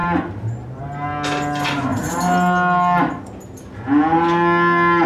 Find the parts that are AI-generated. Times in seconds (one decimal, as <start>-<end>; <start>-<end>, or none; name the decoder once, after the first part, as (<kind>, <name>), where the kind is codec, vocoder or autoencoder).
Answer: none